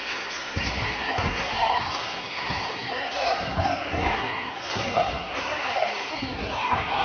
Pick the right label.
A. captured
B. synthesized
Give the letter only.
B